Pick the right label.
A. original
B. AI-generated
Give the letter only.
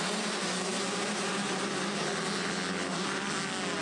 A